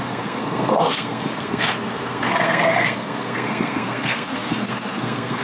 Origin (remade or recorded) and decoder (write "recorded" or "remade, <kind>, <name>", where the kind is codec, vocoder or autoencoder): remade, codec, SNAC